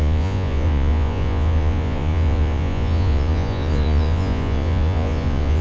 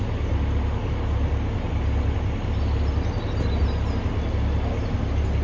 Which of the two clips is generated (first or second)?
first